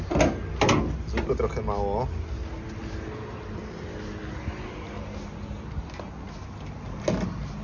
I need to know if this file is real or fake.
real